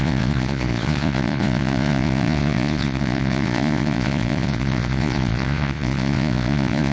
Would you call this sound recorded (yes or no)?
no